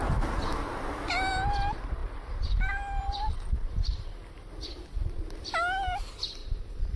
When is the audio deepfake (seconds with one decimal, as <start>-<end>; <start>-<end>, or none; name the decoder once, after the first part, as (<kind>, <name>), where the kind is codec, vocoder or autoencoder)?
2.0-3.2 (vocoder, BigVGAN v2); 6.4-7.0